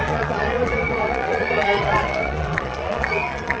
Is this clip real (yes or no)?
no